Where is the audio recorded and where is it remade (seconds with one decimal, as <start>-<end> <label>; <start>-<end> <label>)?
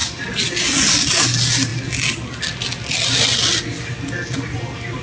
0.0-5.0 recorded